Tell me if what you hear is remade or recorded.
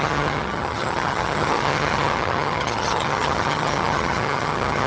remade